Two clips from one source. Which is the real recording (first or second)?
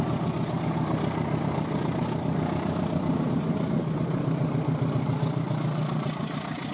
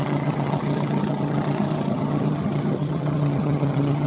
first